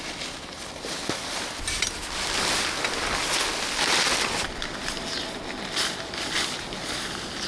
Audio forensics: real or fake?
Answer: real